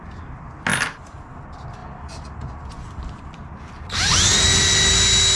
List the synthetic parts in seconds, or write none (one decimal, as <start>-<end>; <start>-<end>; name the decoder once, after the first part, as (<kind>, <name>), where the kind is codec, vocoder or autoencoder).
none